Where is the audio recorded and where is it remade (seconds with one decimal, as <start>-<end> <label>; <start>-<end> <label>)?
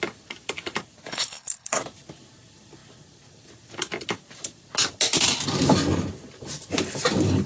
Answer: 0.0-1.1 recorded; 1.1-1.8 remade; 1.8-7.5 recorded